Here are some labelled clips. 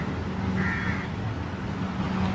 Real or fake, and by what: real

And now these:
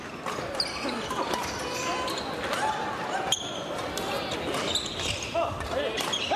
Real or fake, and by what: real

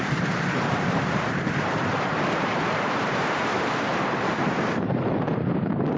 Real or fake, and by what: fake, vocoder, BigVGAN v2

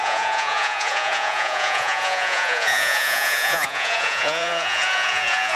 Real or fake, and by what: fake, vocoder, Vocos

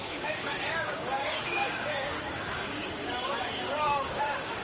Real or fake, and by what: fake, codec, DAC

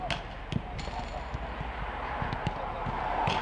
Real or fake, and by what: real